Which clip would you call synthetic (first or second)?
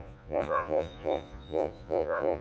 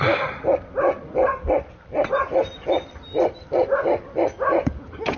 first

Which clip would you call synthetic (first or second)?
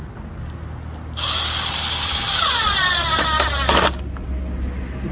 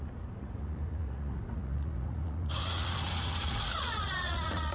second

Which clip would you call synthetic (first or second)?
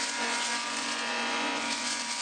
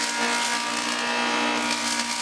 first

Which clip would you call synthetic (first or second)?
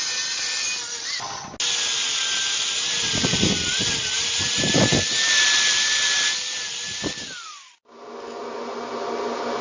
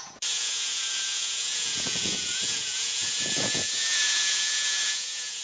second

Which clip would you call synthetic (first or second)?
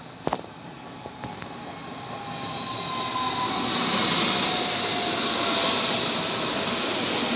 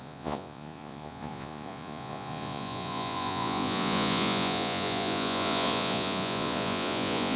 second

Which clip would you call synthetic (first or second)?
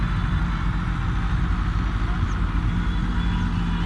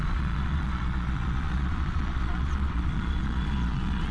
second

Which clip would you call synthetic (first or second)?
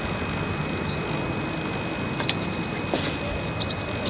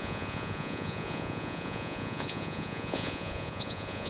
second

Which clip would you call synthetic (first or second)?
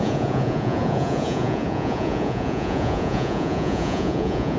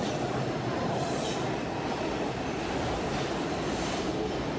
first